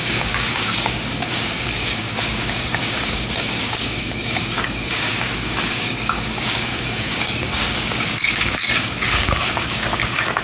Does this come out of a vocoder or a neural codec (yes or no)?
yes